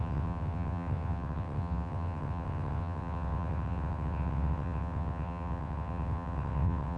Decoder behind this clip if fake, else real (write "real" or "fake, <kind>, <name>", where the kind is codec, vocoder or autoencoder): fake, vocoder, WaveNeXt